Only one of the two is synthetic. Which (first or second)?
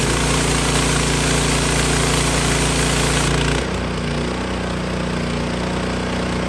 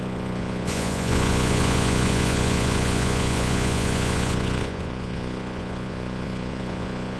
second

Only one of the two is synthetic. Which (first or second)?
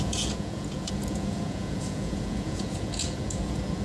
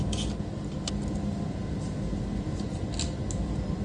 first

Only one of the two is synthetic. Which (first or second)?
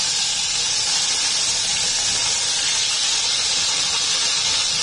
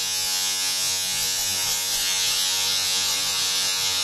second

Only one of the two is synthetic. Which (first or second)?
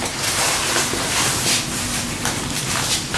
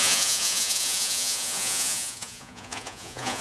second